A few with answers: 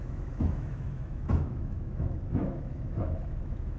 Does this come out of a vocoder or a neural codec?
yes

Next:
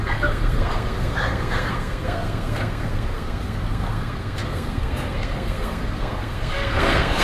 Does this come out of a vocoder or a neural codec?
yes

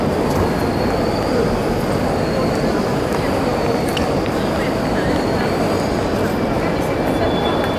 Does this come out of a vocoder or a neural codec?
no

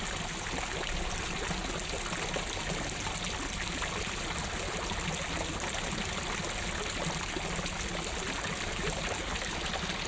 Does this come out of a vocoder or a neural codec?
no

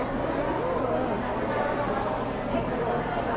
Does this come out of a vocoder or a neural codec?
no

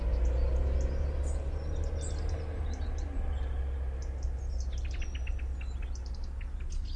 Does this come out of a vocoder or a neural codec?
no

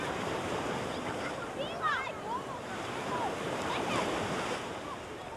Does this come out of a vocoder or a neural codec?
yes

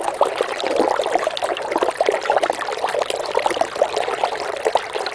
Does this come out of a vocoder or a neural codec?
no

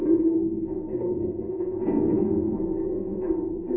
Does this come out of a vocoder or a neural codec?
yes